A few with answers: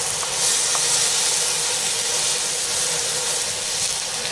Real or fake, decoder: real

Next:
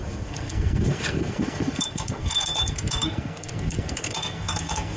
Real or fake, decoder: fake, codec, SNAC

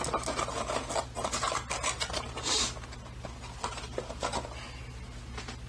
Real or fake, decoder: real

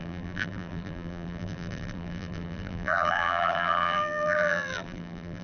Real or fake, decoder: fake, vocoder, BigVGAN v2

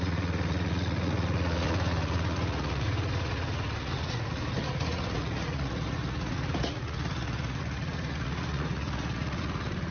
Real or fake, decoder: fake, vocoder, Vocos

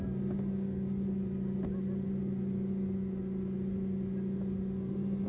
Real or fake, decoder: real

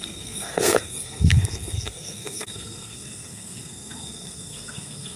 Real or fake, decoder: fake, codec, SNAC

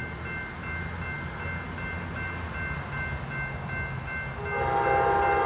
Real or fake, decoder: real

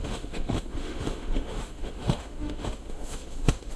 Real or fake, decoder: fake, autoencoder, DAC-VAE